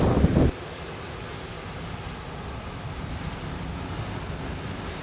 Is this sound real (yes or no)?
yes